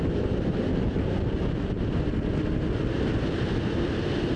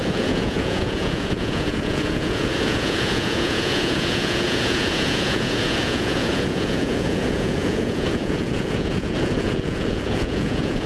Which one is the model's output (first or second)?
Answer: second